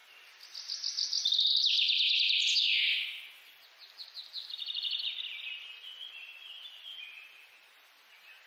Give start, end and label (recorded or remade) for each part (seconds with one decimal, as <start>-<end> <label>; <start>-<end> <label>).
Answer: 0.0-8.5 recorded